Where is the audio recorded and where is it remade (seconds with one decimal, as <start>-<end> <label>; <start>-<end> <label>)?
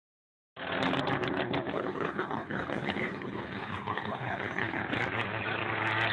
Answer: 0.0-1.7 recorded; 1.7-4.8 remade; 4.8-6.1 recorded